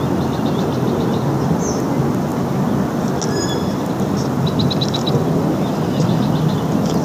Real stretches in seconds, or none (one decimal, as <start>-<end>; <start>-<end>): 0.0-7.0